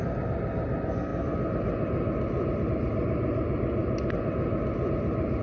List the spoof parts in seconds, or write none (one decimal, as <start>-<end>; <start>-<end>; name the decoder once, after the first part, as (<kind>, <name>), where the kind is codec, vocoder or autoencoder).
none